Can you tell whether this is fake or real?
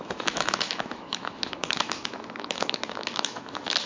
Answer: fake